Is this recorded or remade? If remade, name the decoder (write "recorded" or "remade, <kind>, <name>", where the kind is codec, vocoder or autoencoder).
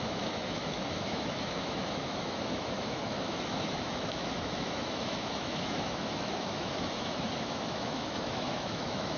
remade, autoencoder, DAC-VAE